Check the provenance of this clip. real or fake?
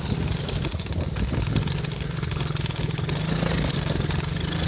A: real